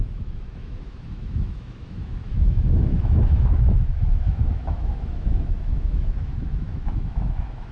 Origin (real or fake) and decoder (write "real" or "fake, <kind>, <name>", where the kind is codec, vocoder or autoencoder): fake, autoencoder, DAC-VAE